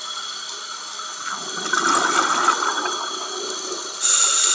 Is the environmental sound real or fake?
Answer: real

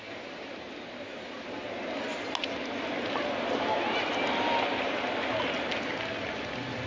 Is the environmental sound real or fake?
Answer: real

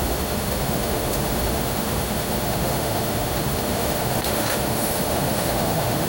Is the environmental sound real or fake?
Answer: fake